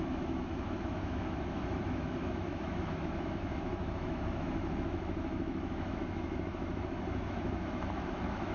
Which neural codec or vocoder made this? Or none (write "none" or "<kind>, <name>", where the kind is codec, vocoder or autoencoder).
autoencoder, DAC-VAE